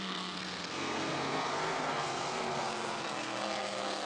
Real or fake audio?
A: fake